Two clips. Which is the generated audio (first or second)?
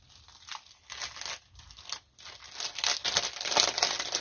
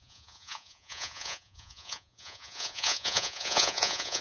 second